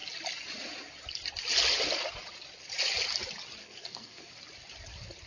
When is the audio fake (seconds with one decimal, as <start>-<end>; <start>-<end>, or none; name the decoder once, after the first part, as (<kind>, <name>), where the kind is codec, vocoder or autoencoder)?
3.6-4.3 (codec, SNAC)